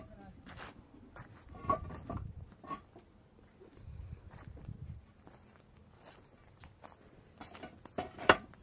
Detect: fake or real real